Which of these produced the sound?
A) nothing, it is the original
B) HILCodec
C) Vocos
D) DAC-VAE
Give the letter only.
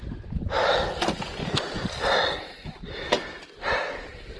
A